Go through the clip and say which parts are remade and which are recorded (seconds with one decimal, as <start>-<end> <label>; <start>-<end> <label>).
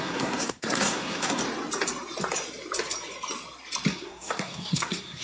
0.0-1.4 remade; 1.4-3.9 recorded; 3.9-5.2 remade